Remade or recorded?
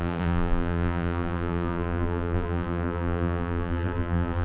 remade